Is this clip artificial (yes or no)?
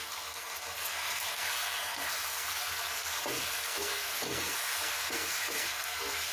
yes